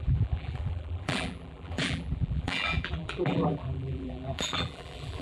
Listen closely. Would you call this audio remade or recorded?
remade